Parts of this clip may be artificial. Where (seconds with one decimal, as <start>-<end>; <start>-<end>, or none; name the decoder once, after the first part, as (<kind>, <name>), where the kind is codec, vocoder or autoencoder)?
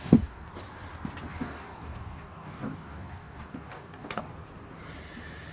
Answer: 0.0-0.5 (codec, DAC); 1.3-4.3